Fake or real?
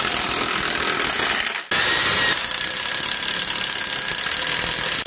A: real